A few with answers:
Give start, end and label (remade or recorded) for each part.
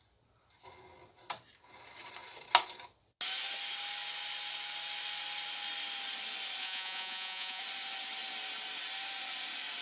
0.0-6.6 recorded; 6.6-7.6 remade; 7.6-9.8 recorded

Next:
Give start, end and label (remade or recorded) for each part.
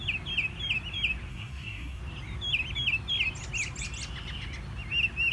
0.0-1.3 recorded; 1.3-2.0 remade; 2.0-5.3 recorded